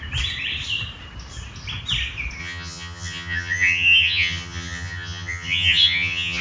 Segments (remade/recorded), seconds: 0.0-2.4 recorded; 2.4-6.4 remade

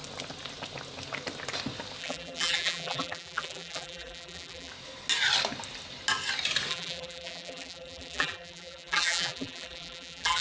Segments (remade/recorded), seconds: 0.0-2.0 recorded; 2.0-4.7 remade; 4.7-6.7 recorded; 6.7-10.4 remade

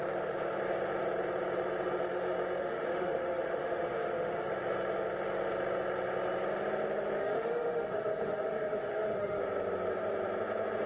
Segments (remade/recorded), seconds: 0.0-2.6 recorded; 2.6-4.5 remade; 4.5-7.2 recorded; 7.2-9.4 remade; 9.4-10.9 recorded

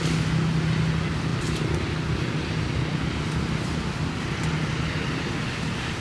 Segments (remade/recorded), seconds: 0.0-6.0 recorded

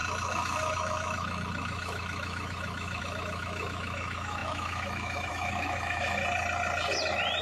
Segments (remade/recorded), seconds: 0.0-6.2 remade; 6.2-7.4 recorded